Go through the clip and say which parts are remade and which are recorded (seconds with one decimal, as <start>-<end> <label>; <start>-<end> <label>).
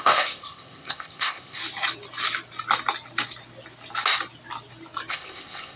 0.0-1.6 remade; 1.6-5.1 recorded; 5.1-5.8 remade